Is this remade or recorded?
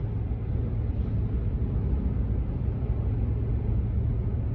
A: recorded